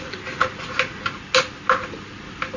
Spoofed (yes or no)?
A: no